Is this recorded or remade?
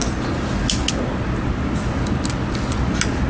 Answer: recorded